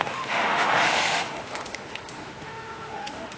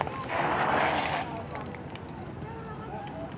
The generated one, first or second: first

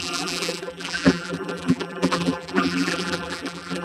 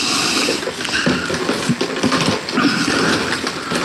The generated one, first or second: first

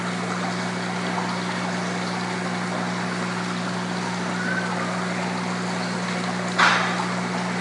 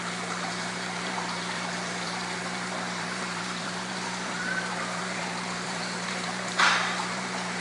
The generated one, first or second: second